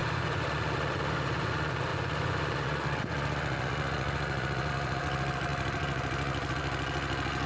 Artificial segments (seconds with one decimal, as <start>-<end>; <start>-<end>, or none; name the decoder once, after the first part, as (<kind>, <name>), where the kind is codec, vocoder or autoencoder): 0.0-7.5 (vocoder, Vocos)